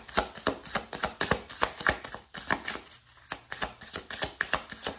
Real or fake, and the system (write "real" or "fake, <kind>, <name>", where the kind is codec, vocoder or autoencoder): real